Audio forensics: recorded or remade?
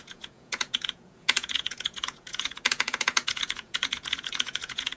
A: remade